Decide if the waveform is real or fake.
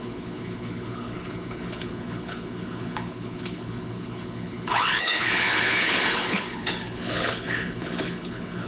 fake